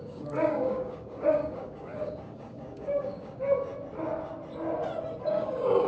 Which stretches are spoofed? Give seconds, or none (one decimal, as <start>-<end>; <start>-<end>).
0.0-3.7; 5.2-5.9